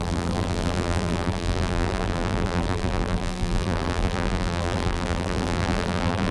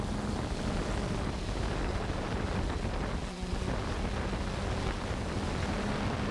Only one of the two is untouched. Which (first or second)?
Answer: second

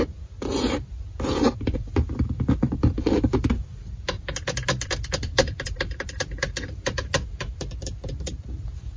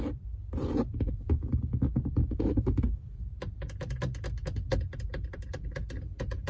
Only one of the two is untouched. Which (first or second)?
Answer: second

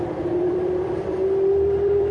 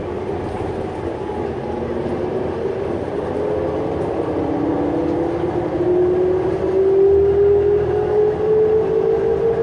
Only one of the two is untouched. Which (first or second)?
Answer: second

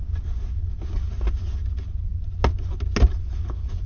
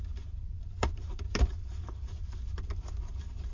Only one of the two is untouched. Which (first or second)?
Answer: first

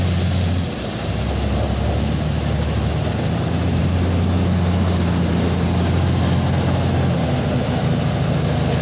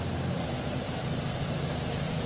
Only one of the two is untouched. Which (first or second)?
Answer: first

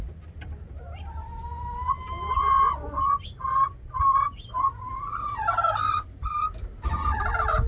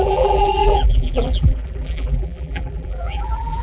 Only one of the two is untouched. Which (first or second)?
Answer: first